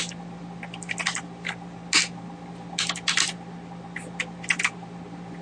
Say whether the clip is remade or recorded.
recorded